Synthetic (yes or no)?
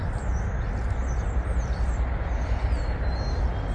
no